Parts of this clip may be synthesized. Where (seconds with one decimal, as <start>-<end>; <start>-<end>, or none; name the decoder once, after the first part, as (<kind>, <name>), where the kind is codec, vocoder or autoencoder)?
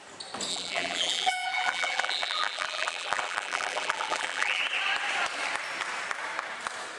0.5-4.6 (vocoder, BigVGAN v2)